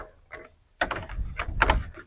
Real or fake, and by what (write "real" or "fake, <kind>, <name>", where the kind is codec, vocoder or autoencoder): real